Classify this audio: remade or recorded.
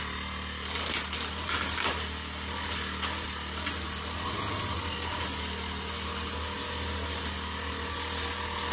recorded